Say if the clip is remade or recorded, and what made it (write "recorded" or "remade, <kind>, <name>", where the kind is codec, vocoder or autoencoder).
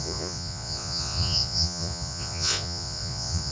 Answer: remade, vocoder, Vocos